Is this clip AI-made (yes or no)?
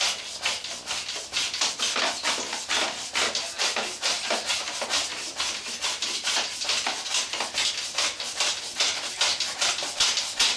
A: no